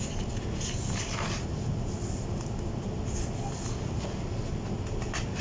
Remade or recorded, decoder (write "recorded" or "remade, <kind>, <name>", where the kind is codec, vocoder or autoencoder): recorded